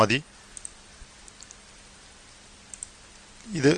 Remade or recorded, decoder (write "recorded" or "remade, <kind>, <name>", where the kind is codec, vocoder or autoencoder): recorded